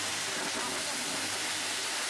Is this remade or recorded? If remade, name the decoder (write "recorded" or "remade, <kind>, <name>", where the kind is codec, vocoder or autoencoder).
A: recorded